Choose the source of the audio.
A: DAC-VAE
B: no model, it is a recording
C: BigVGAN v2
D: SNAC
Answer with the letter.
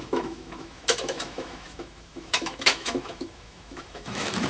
A